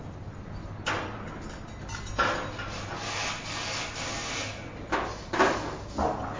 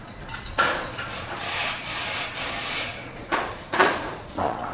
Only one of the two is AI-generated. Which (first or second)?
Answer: second